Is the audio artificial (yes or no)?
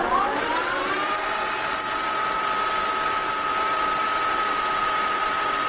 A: no